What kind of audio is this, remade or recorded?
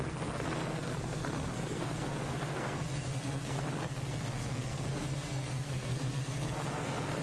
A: remade